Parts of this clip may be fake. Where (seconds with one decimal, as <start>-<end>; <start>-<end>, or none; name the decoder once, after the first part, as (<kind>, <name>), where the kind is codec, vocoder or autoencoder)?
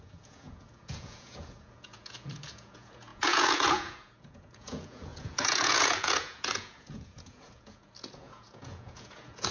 0.0-9.5 (vocoder, Vocos)